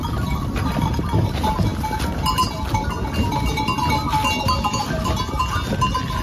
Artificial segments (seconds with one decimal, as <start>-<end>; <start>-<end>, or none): none